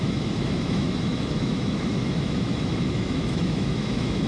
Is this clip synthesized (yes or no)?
yes